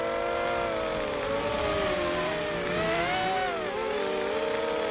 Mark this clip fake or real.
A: real